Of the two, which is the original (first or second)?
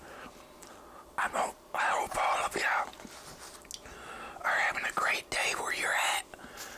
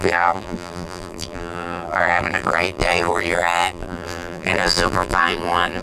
first